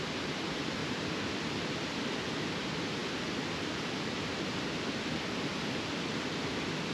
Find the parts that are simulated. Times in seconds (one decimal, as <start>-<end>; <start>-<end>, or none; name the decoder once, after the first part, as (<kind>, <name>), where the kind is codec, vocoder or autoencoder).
0.8-2.0 (vocoder, BigVGAN v2)